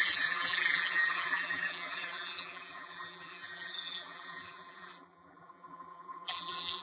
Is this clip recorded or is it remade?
remade